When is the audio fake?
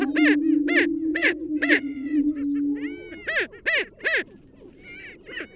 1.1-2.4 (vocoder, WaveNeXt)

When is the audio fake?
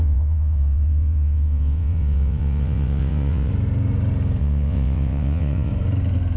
0.0-3.5 (vocoder, WaveNeXt); 4.4-5.7